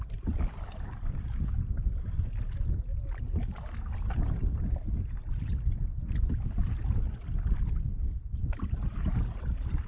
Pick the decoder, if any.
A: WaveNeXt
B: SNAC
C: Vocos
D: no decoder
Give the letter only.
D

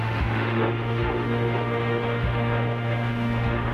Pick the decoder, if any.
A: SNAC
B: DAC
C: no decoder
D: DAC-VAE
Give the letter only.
D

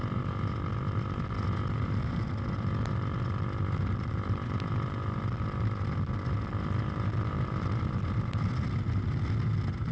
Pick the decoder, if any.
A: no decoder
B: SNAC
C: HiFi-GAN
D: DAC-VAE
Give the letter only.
A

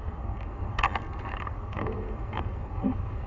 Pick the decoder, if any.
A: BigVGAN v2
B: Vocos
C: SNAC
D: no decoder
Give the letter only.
C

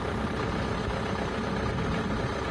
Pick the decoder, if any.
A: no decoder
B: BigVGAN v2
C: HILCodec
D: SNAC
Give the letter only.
B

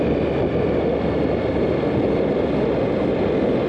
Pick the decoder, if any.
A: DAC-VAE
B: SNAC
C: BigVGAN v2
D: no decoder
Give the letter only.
D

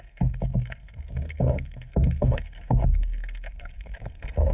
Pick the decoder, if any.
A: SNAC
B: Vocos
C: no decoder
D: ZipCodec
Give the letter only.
A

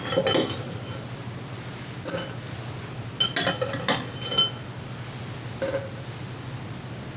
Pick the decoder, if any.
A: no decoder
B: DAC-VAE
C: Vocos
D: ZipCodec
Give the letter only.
A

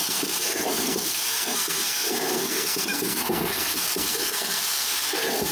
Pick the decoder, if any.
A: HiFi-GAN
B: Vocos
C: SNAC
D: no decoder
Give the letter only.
C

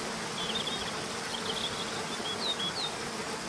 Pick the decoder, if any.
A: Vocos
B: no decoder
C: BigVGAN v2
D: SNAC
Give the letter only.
B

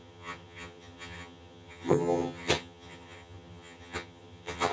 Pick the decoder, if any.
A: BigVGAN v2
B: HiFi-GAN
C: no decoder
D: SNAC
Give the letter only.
B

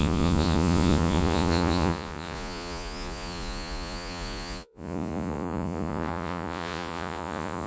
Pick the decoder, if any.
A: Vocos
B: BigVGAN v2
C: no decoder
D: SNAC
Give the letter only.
A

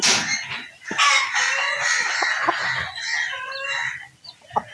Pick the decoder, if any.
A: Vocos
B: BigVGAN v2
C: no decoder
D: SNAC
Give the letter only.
C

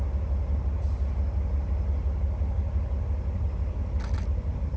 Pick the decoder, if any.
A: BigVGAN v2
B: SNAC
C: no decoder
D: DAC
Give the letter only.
C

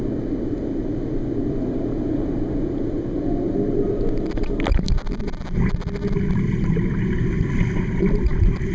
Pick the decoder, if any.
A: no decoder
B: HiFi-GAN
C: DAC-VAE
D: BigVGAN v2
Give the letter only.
A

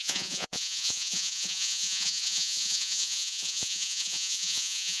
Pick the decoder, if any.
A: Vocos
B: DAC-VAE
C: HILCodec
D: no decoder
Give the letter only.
A